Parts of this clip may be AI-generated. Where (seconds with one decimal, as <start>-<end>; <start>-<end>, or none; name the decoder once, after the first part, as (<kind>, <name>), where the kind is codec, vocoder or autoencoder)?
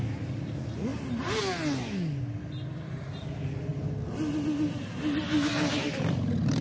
none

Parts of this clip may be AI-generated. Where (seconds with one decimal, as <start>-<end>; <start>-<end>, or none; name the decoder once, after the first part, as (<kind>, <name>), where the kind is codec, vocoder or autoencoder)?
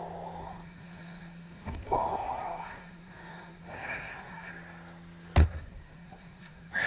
0.4-4.5 (codec, SNAC); 5.4-6.9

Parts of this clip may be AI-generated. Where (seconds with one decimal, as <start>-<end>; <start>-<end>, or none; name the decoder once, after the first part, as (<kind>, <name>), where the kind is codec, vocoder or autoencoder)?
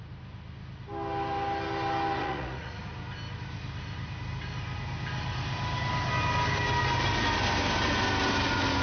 2.2-2.8 (vocoder, Vocos)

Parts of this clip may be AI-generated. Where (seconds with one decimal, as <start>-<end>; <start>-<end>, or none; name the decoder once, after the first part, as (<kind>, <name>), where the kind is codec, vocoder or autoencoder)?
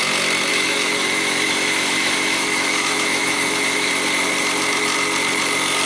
0.5-3.9 (autoencoder, DAC-VAE)